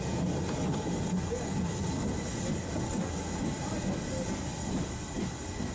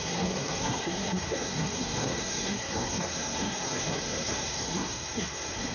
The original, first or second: first